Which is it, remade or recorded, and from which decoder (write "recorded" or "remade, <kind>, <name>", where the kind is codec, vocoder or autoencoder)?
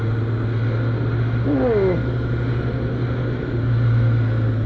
recorded